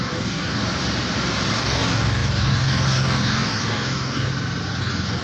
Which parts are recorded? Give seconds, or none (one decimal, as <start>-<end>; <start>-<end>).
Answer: 0.6-1.6; 4.3-4.8

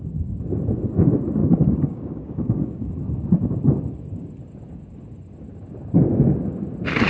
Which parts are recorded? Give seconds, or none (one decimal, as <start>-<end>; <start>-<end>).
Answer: 0.0-1.4; 2.9-7.1

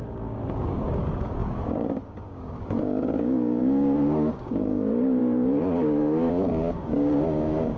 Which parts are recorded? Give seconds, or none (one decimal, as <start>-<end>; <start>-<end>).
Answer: none

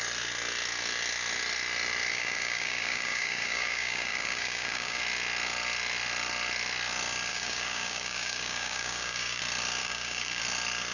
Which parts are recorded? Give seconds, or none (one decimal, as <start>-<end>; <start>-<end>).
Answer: 0.0-2.1; 5.0-7.3; 9.4-9.8; 10.4-10.9